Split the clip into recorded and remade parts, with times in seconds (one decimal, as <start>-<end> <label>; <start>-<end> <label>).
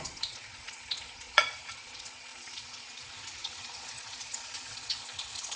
0.0-5.6 remade